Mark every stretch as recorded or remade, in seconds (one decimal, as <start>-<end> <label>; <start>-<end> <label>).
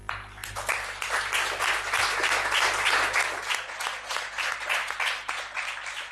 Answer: 0.0-4.8 recorded; 4.8-6.1 remade